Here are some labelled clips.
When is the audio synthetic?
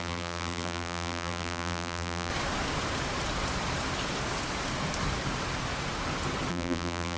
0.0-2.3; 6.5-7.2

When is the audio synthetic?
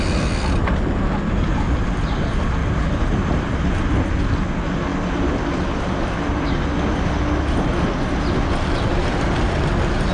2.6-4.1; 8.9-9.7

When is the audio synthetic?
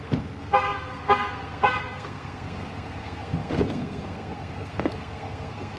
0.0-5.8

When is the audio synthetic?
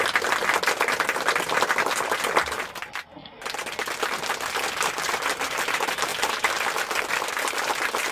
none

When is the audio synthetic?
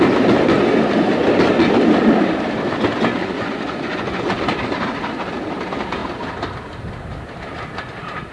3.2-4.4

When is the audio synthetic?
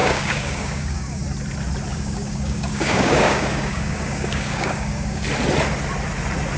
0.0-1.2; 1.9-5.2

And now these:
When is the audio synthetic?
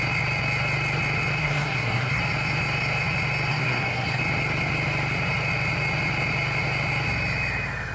1.4-2.2; 3.5-4.2